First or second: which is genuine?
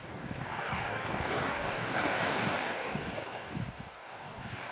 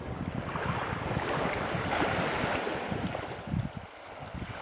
second